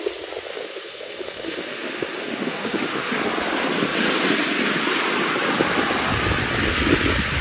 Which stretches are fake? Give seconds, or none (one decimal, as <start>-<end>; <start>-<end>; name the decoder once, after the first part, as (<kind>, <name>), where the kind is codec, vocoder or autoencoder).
0.5-3.1 (autoencoder, DAC-VAE)